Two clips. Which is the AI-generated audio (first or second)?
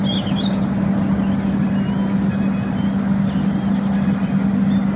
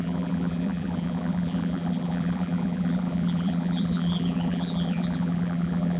second